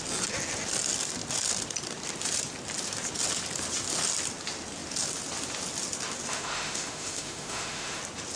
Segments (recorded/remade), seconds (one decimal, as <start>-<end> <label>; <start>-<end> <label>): 0.0-6.3 recorded; 6.3-8.0 remade; 8.0-8.4 recorded